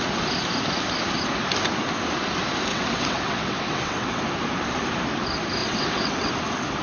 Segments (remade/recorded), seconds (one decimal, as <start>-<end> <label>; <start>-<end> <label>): 0.0-2.7 recorded; 2.7-4.2 remade; 4.2-5.6 recorded; 5.6-6.3 remade; 6.3-6.8 recorded